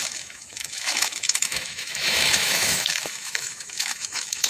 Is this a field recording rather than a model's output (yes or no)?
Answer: no